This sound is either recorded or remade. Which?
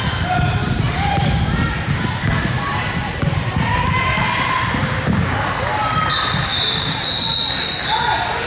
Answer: recorded